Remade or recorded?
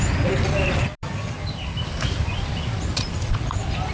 recorded